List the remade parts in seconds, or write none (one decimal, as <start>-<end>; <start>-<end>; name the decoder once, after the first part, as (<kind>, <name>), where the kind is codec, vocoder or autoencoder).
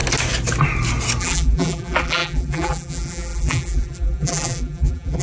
1.2-5.2 (vocoder, BigVGAN v2)